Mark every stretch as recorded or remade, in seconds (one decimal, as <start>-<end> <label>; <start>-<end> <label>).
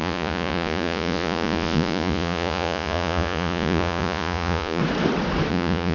0.0-4.8 remade; 4.8-5.5 recorded; 5.5-5.9 remade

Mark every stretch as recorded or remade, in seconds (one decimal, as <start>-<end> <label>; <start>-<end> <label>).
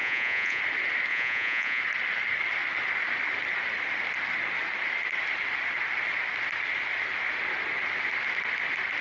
0.0-0.6 remade; 0.6-1.1 recorded; 1.1-1.8 remade; 1.8-9.0 recorded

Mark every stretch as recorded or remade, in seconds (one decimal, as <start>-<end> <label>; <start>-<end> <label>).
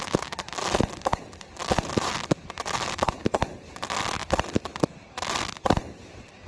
0.0-6.5 recorded